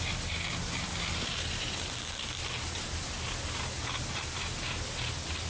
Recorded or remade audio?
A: recorded